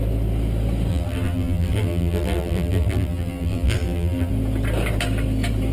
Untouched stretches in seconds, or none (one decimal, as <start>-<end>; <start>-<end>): 0.0-0.9; 4.3-5.7